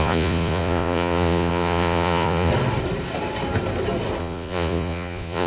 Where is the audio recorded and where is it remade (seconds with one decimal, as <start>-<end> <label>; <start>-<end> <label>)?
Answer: 0.0-2.5 remade; 2.5-4.2 recorded; 4.2-5.5 remade